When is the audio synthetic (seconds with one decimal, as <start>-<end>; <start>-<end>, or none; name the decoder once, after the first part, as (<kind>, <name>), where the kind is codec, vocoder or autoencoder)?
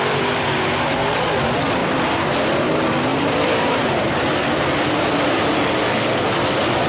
1.8-2.3 (vocoder, BigVGAN v2); 3.1-4.1